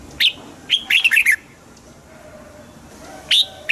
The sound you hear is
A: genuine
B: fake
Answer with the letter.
A